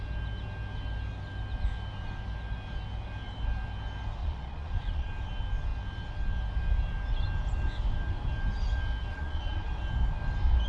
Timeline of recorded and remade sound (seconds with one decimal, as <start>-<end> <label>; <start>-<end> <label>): 0.0-4.2 recorded; 4.2-5.1 remade; 5.1-9.1 recorded; 9.1-9.7 remade; 9.7-10.7 recorded